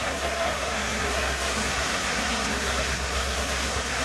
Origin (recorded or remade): remade